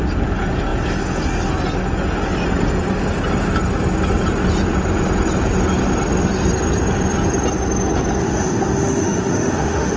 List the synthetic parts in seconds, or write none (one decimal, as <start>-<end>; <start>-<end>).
8.2-10.0